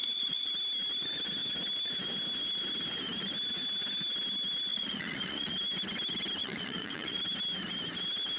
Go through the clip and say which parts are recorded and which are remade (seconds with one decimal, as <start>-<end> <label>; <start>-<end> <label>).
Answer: 0.0-0.5 remade; 0.5-4.7 recorded; 4.7-5.5 remade; 5.5-6.4 recorded; 6.4-7.2 remade; 7.2-8.4 recorded